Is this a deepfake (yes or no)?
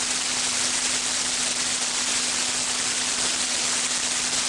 no